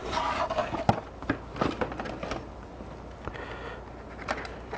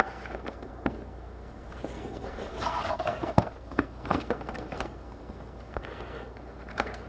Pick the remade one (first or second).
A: second